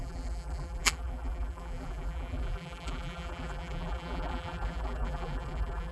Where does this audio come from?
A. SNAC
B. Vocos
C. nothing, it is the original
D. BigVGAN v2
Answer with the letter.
D